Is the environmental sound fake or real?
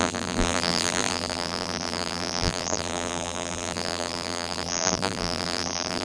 fake